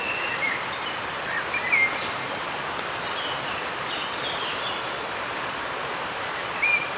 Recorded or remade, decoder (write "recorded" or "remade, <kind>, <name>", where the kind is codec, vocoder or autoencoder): recorded